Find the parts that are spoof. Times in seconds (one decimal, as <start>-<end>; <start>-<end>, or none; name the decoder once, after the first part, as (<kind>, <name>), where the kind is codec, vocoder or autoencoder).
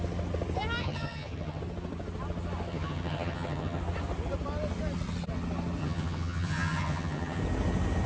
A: 0.8-1.6 (vocoder, HiFi-GAN); 2.7-3.8; 5.8-7.4